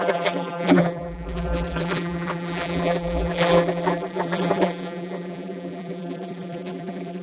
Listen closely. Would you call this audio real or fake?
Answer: fake